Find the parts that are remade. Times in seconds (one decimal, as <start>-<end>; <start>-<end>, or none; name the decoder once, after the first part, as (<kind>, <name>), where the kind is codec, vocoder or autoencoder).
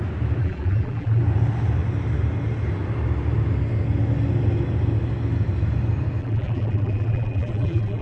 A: 0.4-1.2 (vocoder, BigVGAN v2); 6.2-8.0